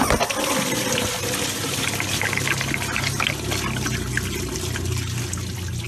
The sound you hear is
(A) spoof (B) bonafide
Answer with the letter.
B